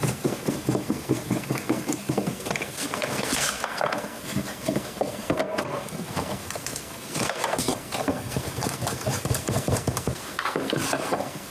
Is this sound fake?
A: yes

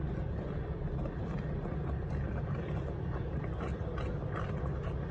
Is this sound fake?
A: no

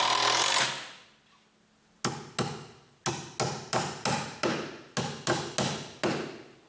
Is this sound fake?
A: no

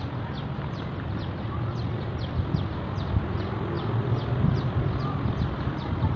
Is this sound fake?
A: no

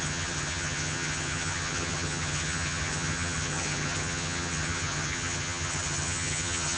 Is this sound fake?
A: yes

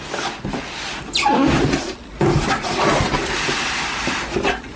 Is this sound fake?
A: no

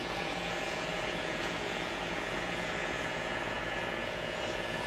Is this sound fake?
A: yes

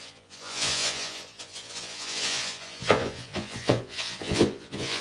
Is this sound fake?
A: yes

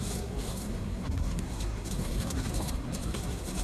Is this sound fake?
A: yes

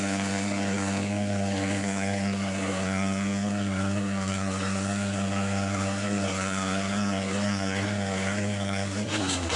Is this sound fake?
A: yes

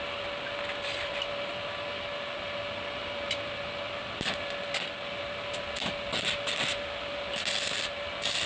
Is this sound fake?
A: no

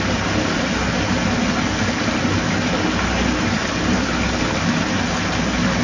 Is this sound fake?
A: no